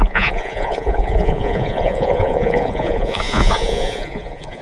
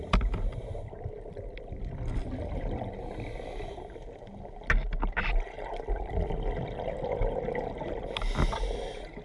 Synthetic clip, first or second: first